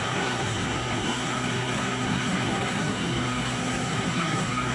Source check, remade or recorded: remade